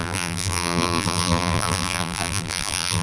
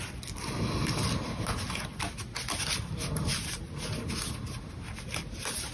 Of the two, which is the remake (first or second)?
first